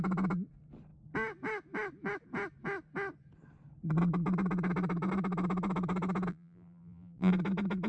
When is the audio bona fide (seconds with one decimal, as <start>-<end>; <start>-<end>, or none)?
0.0-6.3; 7.3-7.9